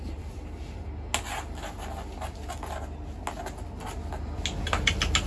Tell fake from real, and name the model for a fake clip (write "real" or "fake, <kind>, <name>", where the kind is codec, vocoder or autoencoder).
real